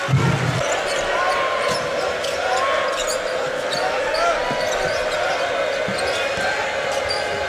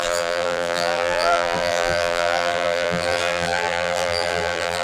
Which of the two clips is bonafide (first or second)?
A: first